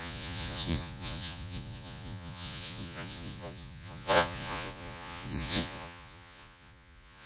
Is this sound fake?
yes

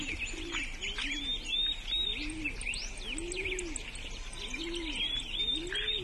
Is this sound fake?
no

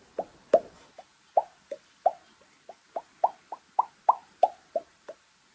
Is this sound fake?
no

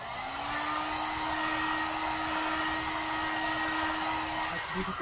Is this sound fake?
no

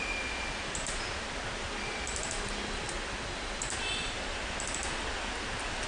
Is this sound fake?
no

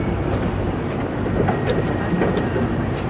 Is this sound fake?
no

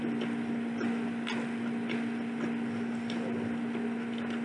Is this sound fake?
no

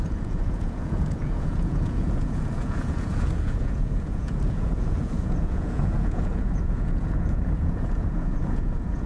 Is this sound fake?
yes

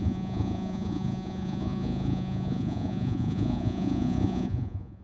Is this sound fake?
yes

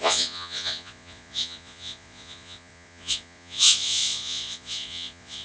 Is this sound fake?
yes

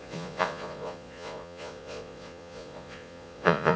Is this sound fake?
yes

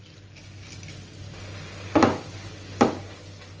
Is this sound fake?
no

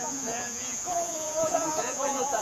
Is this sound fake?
yes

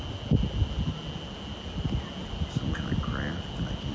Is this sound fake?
no